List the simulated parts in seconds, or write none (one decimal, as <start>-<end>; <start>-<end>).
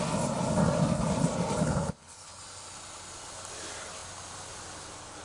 1.6-2.4